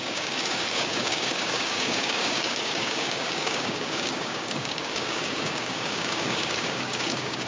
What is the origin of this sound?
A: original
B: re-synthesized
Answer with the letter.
B